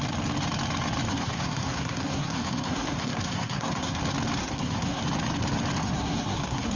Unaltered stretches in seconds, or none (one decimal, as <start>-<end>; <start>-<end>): 0.0-1.1; 4.0-4.4; 5.0-5.8